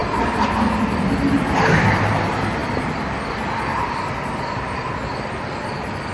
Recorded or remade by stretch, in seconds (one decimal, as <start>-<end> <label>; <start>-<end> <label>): 0.0-3.7 recorded; 3.7-4.9 remade; 4.9-6.1 recorded